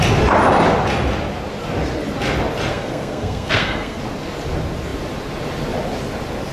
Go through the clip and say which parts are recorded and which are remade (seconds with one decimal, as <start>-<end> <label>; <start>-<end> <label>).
0.0-2.7 recorded; 2.7-4.0 remade; 4.0-6.5 recorded